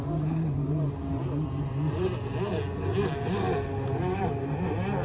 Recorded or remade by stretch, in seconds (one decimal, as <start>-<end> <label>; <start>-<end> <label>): 0.0-5.0 recorded